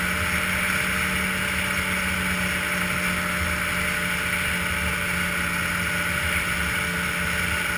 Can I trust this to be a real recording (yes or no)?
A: yes